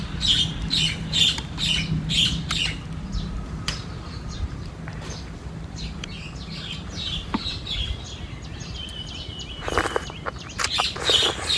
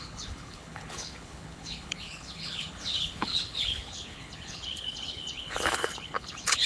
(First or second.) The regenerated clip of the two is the second